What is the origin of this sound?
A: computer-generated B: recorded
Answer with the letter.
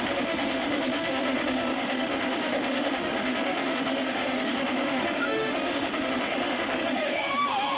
A